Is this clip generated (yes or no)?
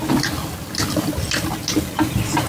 no